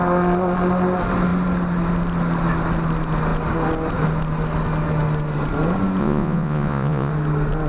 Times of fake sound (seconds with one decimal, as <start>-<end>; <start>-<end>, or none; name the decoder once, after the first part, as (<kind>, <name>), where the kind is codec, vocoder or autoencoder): 6.0-7.1 (vocoder, Vocos)